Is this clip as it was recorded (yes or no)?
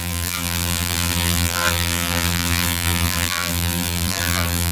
no